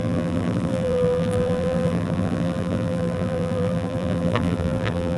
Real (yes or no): no